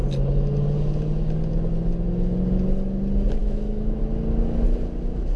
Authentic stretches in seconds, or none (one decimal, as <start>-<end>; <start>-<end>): 0.0-3.4; 4.0-5.4